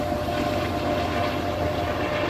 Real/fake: real